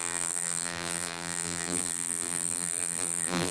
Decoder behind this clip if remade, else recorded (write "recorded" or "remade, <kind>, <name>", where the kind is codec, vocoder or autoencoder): remade, vocoder, BigVGAN v2